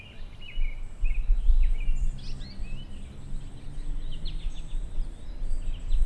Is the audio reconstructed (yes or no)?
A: no